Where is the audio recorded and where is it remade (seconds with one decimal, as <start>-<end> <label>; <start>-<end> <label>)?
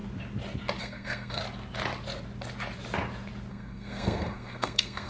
0.0-0.8 recorded; 0.8-1.4 remade; 1.4-3.5 recorded; 3.5-5.1 remade